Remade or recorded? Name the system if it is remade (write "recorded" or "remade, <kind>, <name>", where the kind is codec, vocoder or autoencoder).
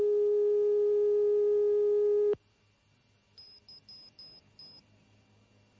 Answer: recorded